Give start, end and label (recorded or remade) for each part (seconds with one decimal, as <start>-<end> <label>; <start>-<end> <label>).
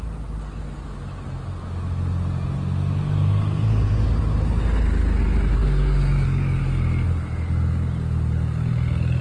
0.0-5.6 recorded; 5.6-6.6 remade; 6.6-9.2 recorded